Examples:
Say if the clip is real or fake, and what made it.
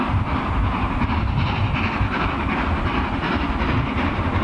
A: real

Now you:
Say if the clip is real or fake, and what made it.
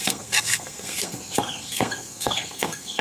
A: fake, codec, SNAC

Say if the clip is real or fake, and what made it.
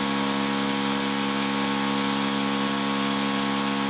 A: real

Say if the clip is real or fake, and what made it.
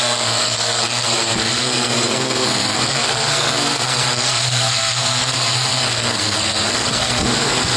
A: fake, codec, SNAC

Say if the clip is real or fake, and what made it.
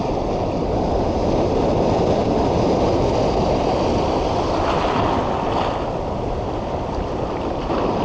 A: real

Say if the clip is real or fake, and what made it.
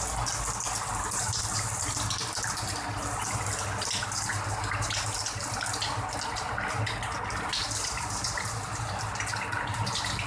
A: real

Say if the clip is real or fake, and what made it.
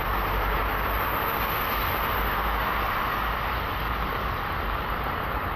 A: real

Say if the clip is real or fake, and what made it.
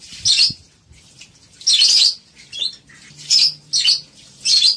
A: real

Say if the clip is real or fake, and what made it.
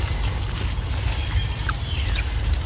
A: real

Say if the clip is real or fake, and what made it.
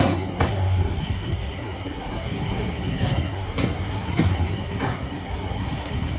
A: fake, codec, SNAC